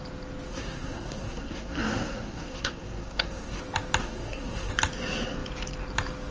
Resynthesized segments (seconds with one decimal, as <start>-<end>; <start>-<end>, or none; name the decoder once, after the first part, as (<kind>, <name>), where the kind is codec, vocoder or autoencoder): 0.5-3.6 (codec, SNAC); 4.0-4.7